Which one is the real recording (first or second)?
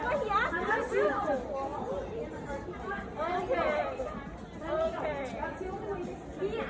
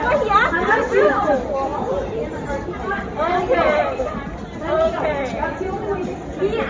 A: first